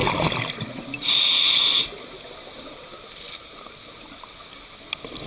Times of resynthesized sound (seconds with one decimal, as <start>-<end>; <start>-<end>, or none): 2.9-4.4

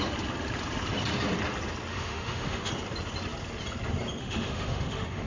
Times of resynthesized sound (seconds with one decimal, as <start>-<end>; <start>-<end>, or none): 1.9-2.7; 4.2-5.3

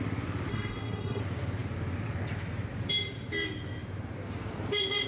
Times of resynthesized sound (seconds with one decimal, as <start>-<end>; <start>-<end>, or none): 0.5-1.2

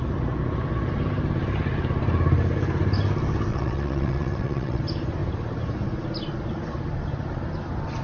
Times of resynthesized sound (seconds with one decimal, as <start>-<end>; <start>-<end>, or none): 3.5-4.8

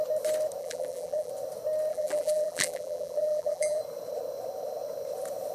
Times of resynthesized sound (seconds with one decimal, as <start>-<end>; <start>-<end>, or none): 0.6-1.3; 1.9-3.8

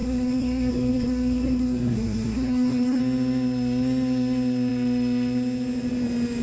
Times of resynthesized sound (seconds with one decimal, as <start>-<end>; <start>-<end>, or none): 0.0-3.0

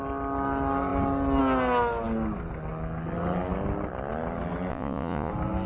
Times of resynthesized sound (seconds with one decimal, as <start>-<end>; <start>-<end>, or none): 4.7-5.3

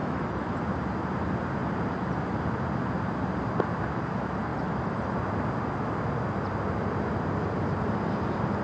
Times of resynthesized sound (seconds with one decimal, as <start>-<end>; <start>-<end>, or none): 0.0-0.6; 4.5-5.2